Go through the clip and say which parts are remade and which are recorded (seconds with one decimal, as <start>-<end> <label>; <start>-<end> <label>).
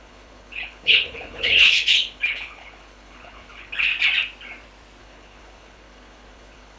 0.0-3.9 remade; 3.9-5.0 recorded; 5.0-6.8 remade